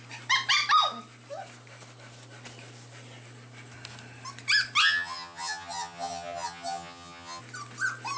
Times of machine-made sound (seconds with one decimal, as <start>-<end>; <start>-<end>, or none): 4.8-7.4